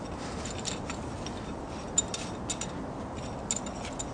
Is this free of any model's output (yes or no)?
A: yes